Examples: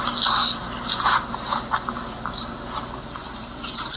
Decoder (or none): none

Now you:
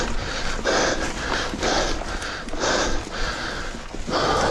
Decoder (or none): none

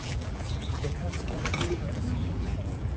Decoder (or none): vocoder, BigVGAN v2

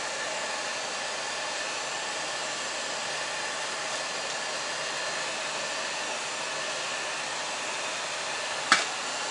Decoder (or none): none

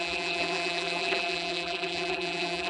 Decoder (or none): vocoder, BigVGAN v2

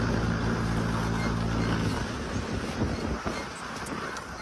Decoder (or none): none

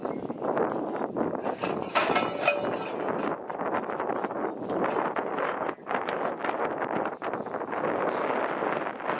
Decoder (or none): none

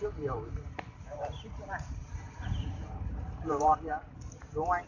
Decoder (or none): vocoder, BigVGAN v2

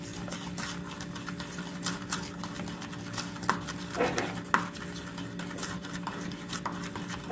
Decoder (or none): none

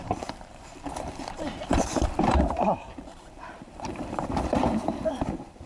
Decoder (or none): vocoder, BigVGAN v2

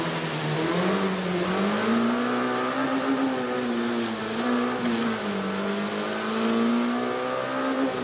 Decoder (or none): none